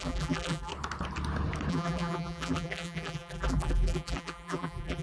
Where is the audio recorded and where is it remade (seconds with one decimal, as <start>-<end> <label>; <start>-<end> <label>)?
0.0-0.7 remade; 0.7-1.7 recorded; 1.7-5.0 remade